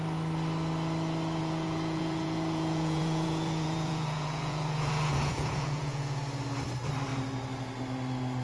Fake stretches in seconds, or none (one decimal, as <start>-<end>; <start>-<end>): 1.4-6.2

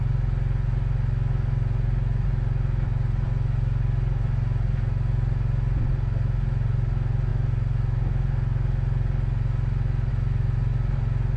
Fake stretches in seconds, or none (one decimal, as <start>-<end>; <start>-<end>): none

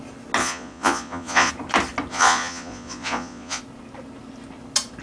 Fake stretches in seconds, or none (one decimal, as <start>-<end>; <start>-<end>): 0.4-1.5; 2.1-3.6

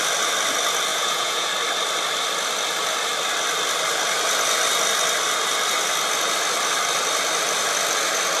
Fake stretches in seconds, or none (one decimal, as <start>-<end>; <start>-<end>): 0.9-1.5